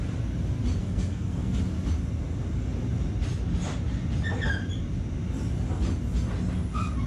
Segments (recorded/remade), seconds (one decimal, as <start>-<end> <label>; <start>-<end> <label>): 0.0-0.8 recorded; 0.8-1.6 remade; 1.6-7.1 recorded